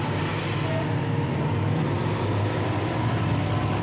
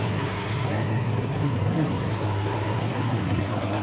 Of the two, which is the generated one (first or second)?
second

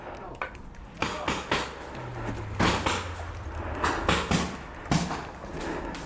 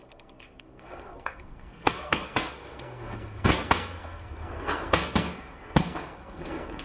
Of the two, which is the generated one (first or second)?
second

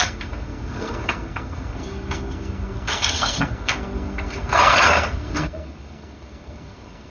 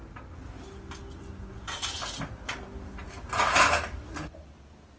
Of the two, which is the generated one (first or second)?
first